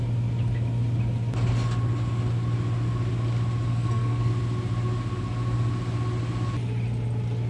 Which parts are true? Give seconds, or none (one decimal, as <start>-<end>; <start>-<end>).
0.0-3.7; 4.3-7.5